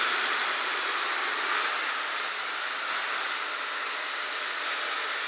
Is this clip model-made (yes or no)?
no